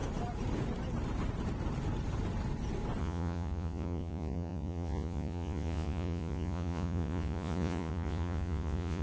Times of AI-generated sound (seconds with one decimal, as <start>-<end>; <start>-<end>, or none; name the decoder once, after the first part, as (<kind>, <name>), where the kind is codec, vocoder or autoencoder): 3.0-9.0 (vocoder, Vocos)